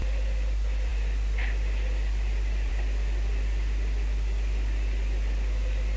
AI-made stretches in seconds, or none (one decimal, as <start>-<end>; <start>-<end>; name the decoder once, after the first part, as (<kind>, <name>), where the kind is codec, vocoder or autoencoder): none